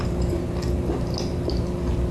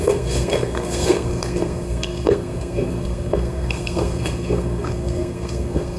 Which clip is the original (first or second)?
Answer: first